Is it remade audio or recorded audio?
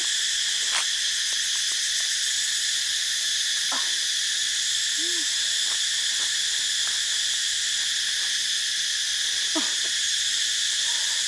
recorded